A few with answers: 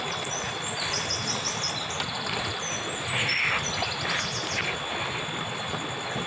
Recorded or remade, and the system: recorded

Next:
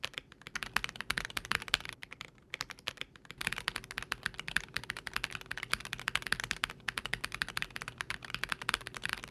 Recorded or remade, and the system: recorded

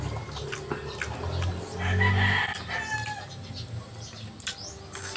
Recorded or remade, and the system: recorded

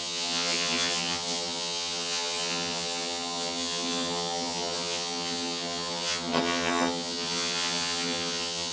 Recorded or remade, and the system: remade, vocoder, HiFi-GAN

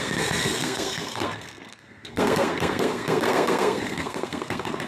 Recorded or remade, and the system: remade, codec, SNAC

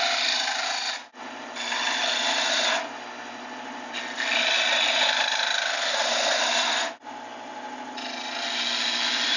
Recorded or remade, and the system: recorded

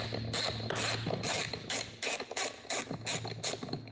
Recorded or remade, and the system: remade, vocoder, BigVGAN v2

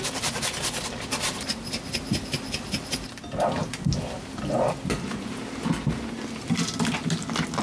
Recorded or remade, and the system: recorded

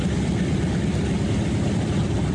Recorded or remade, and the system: recorded